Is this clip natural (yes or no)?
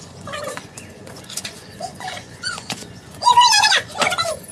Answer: no